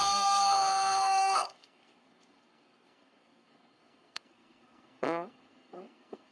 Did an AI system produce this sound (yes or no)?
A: yes